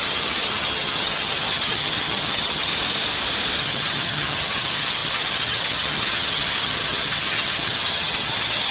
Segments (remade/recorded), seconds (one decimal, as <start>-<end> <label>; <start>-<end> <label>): 0.0-2.7 remade; 2.7-3.6 recorded; 3.6-8.7 remade